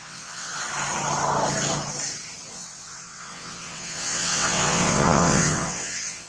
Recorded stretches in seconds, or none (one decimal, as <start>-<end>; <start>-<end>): 0.5-2.5